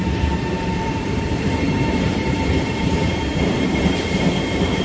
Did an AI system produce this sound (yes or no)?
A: yes